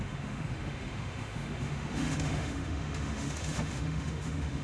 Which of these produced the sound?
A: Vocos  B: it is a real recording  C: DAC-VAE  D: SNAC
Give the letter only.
C